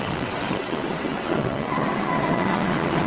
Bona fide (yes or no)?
no